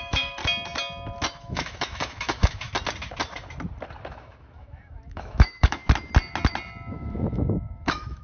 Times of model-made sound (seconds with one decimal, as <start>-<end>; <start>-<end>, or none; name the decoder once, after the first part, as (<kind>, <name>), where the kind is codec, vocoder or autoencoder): 0.0-0.4 (autoencoder, DAC-VAE); 1.3-2.7; 4.1-5.8; 6.9-8.2